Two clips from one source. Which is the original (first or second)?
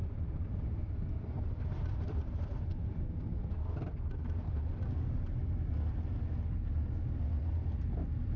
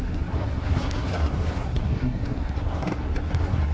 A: first